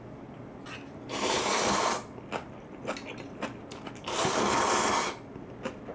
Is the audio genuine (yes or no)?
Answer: yes